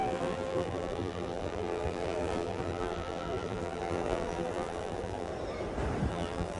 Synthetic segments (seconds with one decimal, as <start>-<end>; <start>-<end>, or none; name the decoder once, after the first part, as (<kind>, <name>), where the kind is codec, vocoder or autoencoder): 0.0-5.3 (vocoder, BigVGAN v2); 6.1-6.6